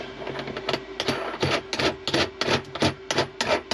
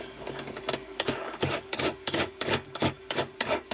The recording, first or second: first